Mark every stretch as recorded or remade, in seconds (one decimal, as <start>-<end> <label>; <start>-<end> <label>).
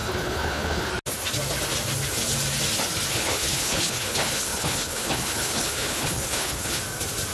0.0-0.9 remade; 0.9-3.1 recorded; 3.1-6.8 remade; 6.8-7.3 recorded